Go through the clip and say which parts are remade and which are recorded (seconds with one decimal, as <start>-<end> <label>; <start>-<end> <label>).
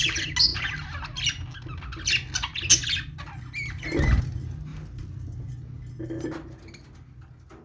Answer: 0.0-4.7 recorded; 4.7-5.5 remade; 5.5-7.6 recorded